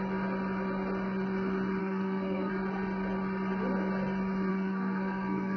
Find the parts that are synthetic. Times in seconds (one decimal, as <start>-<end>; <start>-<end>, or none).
1.8-2.5; 4.5-5.6